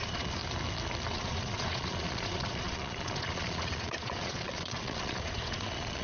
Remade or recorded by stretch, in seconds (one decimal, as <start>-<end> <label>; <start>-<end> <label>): 0.0-0.4 remade; 0.4-1.1 recorded; 1.1-6.0 remade